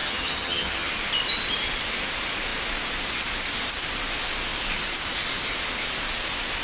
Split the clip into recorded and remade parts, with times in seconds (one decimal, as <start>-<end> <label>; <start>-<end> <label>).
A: 0.0-0.9 remade; 0.9-6.6 recorded